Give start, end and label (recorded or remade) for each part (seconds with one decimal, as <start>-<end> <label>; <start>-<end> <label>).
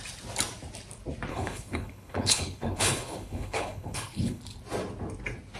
0.0-1.3 recorded; 1.3-4.4 remade; 4.4-5.6 recorded